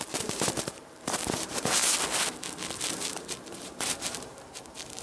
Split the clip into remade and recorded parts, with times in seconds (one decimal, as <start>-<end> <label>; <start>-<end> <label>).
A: 0.0-1.8 remade; 1.8-2.9 recorded; 2.9-5.0 remade